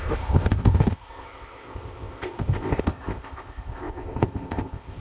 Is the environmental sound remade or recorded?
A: remade